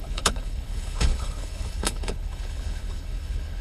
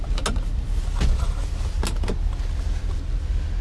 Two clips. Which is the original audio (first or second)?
second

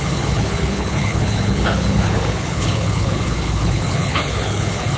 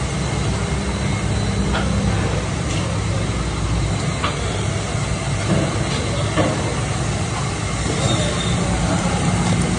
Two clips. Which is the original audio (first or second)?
second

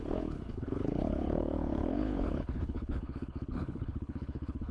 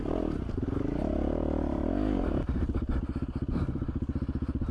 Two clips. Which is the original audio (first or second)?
second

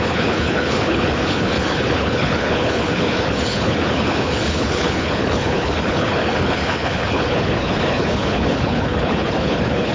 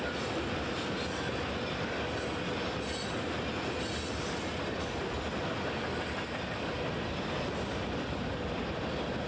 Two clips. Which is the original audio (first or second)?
second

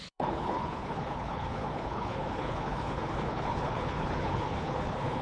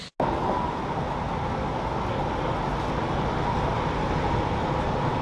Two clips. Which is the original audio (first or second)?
second